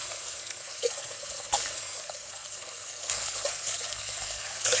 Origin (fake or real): fake